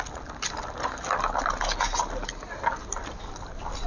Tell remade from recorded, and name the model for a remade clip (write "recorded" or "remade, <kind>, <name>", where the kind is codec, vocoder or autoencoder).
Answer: recorded